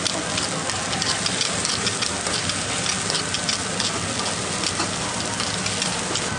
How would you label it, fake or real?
real